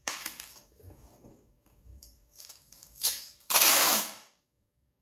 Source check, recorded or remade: remade